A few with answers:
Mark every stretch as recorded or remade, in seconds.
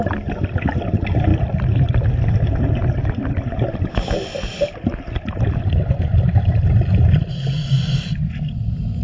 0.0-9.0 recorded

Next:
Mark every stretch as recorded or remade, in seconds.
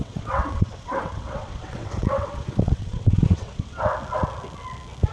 0.0-3.9 remade; 3.9-5.1 recorded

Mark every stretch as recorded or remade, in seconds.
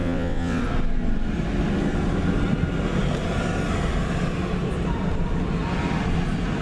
0.0-0.6 remade; 0.6-6.6 recorded